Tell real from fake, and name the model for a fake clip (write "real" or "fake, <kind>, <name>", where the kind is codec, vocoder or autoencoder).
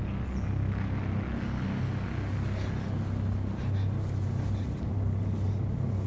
real